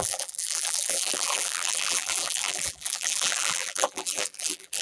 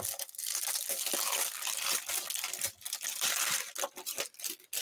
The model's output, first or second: first